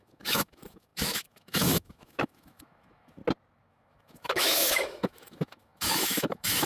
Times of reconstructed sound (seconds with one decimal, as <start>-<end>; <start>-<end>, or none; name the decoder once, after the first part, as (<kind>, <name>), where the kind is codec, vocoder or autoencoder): 0.0-3.2 (autoencoder, DAC-VAE); 3.7-6.7